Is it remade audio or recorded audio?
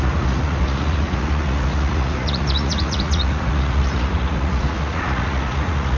remade